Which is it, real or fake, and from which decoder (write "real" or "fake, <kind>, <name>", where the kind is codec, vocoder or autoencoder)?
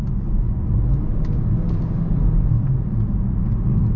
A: real